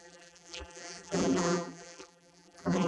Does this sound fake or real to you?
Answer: fake